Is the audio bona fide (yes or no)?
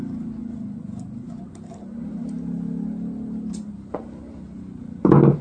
yes